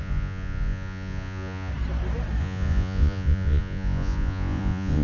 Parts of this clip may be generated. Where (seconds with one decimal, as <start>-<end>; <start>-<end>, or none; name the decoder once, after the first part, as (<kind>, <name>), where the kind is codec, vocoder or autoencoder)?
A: 0.0-1.7 (vocoder, Vocos); 2.4-5.0